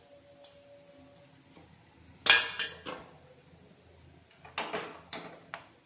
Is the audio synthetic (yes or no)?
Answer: no